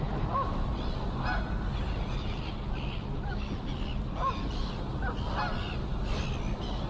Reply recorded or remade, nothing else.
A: recorded